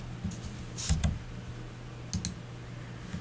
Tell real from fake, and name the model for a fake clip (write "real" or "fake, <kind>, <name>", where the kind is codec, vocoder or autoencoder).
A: real